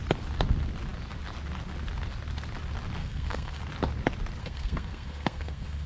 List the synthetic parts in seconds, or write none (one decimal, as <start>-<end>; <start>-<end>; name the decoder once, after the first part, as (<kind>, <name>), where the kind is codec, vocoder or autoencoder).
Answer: 3.0-3.6 (codec, SNAC); 4.4-5.9